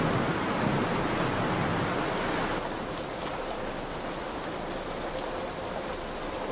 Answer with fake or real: real